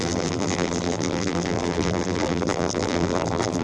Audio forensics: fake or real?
fake